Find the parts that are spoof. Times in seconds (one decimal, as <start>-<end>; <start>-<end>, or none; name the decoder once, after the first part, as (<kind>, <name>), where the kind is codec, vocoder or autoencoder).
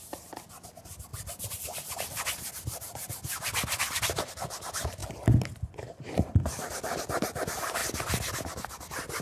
none